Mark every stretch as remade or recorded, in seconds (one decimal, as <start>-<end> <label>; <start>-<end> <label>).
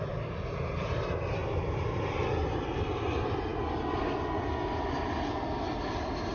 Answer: 0.0-6.3 recorded